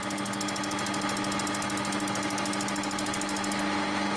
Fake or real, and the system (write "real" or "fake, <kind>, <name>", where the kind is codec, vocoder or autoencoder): real